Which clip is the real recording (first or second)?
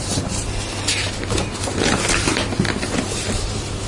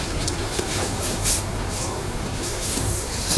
first